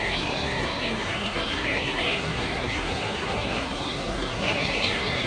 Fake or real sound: fake